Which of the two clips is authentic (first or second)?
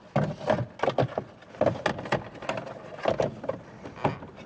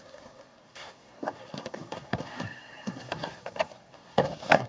first